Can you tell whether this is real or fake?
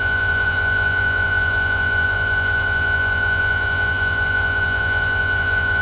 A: fake